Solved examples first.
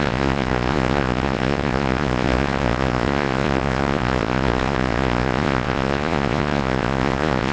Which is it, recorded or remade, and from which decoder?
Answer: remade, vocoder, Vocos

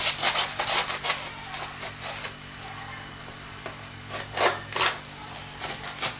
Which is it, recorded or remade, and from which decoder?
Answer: recorded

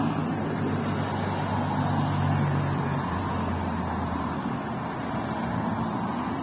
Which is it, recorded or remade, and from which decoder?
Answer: recorded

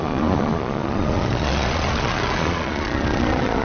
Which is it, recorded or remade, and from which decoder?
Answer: remade, vocoder, Vocos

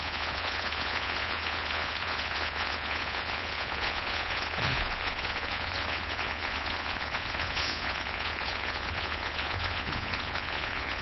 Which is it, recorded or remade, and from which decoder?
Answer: remade, vocoder, Vocos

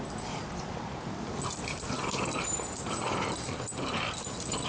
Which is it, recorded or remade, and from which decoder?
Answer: recorded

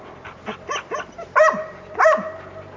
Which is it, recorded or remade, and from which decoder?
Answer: recorded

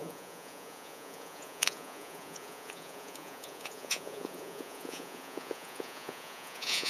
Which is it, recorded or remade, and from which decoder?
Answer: remade, vocoder, Vocos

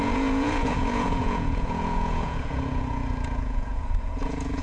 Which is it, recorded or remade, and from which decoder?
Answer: remade, vocoder, Vocos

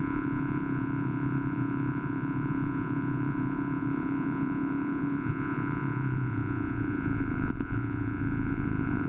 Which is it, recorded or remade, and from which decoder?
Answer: remade, vocoder, Vocos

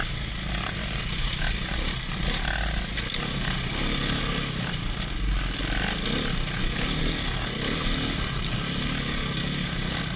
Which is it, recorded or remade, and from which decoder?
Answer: recorded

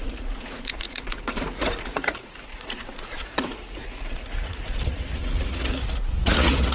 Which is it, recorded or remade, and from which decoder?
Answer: remade, vocoder, Vocos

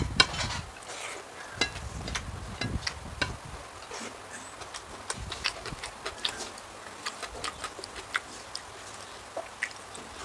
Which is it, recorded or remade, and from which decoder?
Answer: recorded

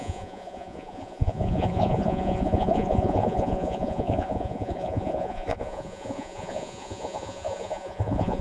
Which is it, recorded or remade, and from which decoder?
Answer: remade, vocoder, Vocos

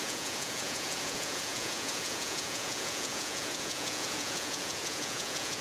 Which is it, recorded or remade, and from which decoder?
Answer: remade, vocoder, Vocos